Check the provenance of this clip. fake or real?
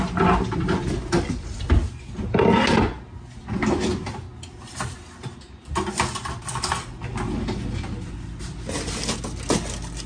real